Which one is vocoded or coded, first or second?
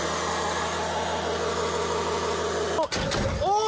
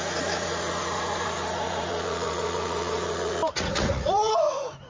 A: second